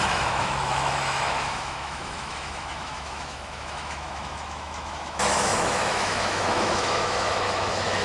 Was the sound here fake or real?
fake